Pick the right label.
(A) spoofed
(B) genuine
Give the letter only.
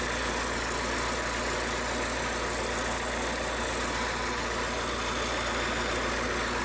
B